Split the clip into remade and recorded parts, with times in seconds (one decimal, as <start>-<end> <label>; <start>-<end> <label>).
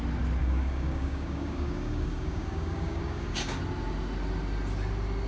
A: 0.0-0.4 recorded; 0.4-3.6 remade; 3.6-5.3 recorded